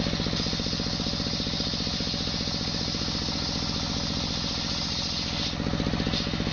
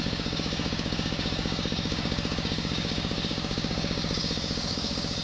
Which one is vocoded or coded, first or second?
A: second